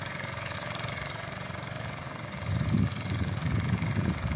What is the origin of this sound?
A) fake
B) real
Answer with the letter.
A